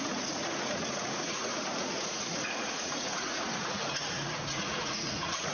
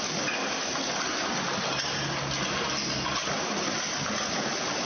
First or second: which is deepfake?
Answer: first